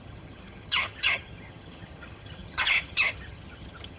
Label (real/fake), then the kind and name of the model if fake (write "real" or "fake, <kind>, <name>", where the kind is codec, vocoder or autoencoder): fake, vocoder, HiFi-GAN